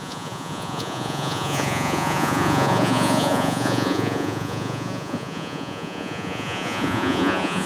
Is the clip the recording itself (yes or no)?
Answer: no